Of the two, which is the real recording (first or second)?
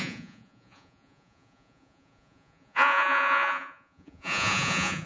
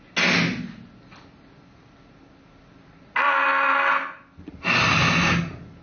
second